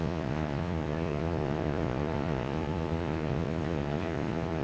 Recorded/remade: remade